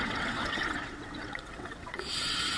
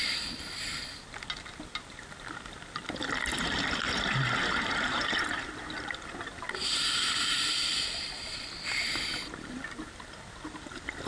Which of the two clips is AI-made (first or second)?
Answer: first